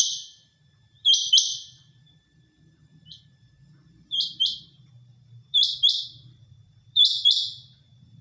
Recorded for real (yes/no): no